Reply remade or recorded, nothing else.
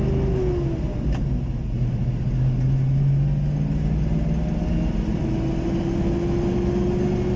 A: recorded